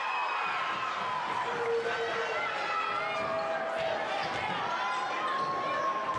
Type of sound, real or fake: real